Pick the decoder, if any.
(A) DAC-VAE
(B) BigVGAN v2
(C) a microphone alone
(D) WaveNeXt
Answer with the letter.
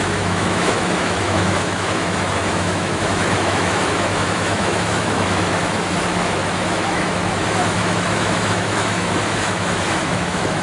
A